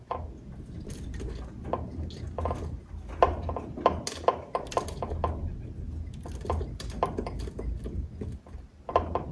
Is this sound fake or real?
real